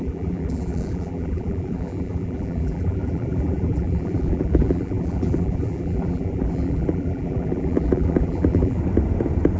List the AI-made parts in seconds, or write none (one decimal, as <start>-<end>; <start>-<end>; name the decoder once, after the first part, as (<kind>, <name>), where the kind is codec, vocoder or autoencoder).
0.0-8.8 (vocoder, BigVGAN v2)

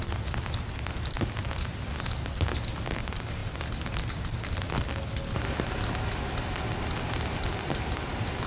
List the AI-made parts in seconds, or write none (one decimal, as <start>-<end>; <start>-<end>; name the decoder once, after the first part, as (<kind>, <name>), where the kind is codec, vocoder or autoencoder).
none

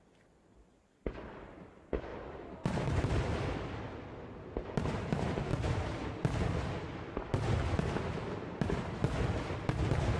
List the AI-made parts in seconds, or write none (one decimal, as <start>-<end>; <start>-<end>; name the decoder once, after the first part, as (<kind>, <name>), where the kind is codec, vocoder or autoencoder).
2.1-3.1 (vocoder, BigVGAN v2); 5.5-6.1

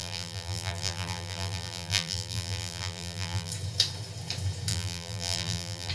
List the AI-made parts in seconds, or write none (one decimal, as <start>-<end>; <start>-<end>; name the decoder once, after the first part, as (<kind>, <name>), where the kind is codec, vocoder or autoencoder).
0.0-3.5 (vocoder, BigVGAN v2); 4.7-5.9

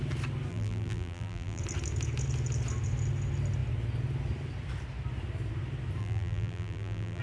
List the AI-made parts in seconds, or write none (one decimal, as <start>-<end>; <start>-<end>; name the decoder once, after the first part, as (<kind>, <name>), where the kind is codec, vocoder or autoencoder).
0.5-1.6 (vocoder, BigVGAN v2); 6.0-7.2